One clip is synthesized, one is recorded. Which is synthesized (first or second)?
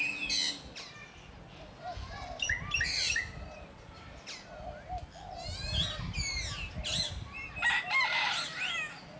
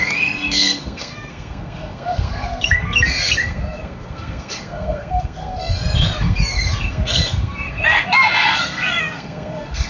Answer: second